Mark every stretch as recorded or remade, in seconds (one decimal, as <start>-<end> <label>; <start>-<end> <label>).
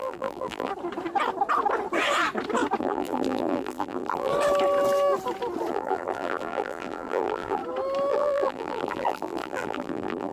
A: 0.0-0.7 remade; 0.7-2.8 recorded; 2.8-4.3 remade; 4.3-5.7 recorded; 5.7-7.6 remade; 7.6-8.1 recorded; 8.1-10.3 remade